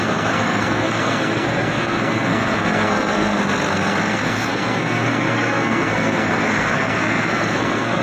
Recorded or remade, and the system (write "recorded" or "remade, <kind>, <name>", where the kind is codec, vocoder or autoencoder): remade, codec, SNAC